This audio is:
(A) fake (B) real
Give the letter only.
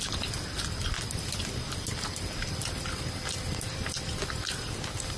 B